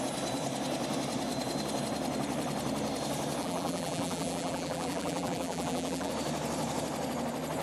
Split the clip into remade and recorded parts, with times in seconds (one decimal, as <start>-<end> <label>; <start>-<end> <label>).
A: 0.0-3.4 recorded; 3.4-6.1 remade; 6.1-7.6 recorded